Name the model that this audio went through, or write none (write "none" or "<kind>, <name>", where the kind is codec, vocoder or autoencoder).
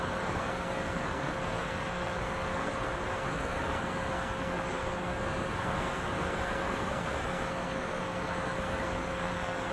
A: codec, SNAC